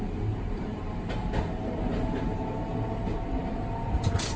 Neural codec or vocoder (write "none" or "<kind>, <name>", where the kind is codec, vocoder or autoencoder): none